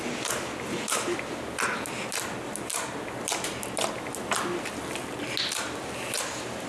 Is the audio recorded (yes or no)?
yes